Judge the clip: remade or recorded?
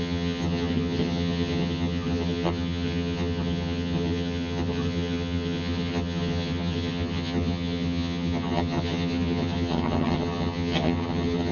remade